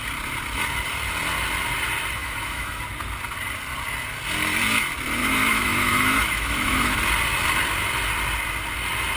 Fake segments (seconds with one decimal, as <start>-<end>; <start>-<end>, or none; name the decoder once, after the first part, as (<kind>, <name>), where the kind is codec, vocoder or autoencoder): 2.2-2.8 (autoencoder, DAC-VAE); 5.2-7.0